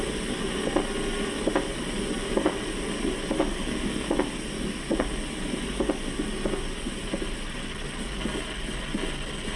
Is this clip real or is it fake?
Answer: real